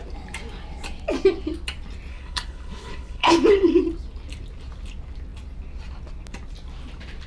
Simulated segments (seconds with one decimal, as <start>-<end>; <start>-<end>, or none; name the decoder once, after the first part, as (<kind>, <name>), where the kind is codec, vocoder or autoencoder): 2.1-3.8 (codec, HILCodec)